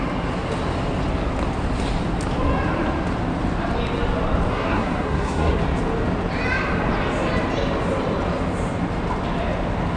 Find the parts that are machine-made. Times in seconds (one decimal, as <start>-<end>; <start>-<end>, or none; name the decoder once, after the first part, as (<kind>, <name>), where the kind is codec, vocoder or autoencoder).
4.5-5.6 (codec, SNAC)